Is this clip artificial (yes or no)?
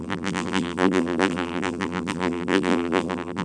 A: yes